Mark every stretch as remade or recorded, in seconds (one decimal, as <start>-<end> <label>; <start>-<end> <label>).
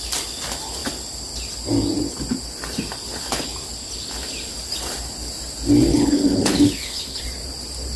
0.0-5.9 recorded; 5.9-7.2 remade; 7.2-8.0 recorded